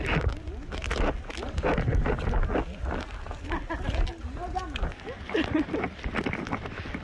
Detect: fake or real real